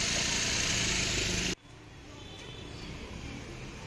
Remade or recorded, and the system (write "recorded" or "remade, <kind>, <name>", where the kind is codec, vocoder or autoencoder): recorded